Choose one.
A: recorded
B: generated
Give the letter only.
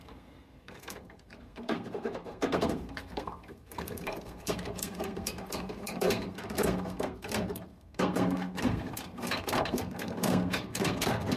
B